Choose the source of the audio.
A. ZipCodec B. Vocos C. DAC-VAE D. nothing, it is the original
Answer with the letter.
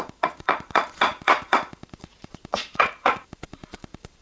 B